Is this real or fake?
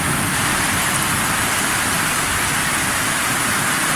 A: real